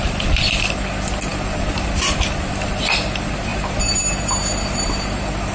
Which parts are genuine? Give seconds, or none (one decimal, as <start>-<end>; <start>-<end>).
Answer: 0.0-5.5